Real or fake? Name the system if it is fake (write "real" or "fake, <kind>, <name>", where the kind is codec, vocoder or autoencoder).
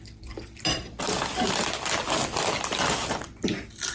real